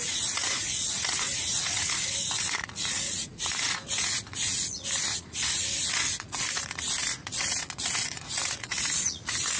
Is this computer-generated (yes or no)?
yes